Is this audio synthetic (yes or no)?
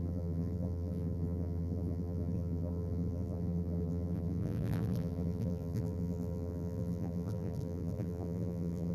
yes